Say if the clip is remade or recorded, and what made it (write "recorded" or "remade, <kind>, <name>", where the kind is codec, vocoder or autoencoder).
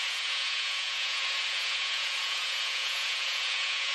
remade, vocoder, Vocos